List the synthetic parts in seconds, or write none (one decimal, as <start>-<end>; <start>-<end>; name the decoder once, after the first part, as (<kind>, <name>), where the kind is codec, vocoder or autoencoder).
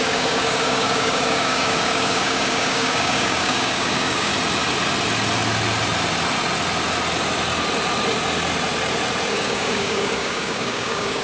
0.0-4.3 (codec, DAC); 9.3-11.2